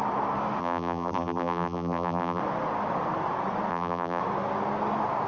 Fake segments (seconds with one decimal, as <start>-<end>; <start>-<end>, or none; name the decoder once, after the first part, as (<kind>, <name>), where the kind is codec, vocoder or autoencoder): 0.6-2.4 (vocoder, BigVGAN v2); 3.7-4.2